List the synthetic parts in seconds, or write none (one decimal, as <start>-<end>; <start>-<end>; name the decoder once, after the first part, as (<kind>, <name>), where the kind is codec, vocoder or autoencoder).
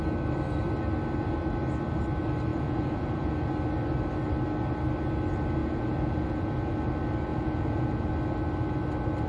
2.5-3.5 (vocoder, Vocos); 5.6-6.8; 7.3-8.1